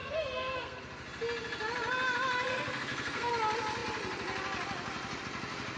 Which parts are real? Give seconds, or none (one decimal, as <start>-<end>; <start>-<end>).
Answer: 0.8-2.5; 3.3-5.8